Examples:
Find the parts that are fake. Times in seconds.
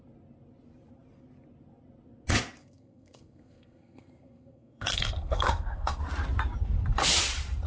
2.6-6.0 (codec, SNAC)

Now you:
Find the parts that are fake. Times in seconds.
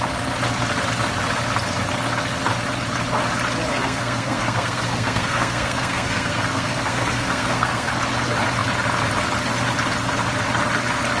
3.7-7.9 (codec, SNAC)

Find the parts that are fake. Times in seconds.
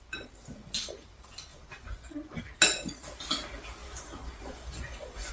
1.5-2.4 (vocoder, Vocos); 3.8-5.3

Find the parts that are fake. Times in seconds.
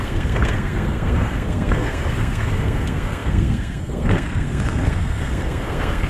0.0-6.1 (codec, SNAC)